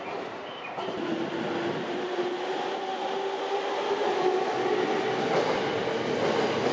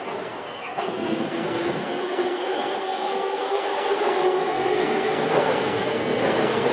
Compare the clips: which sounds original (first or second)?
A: first